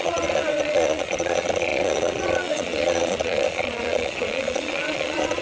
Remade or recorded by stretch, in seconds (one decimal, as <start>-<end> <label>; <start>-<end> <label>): 0.0-5.4 remade